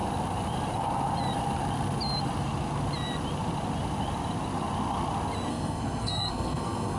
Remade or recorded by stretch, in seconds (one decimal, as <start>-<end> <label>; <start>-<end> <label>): 0.0-5.5 recorded; 5.5-7.0 remade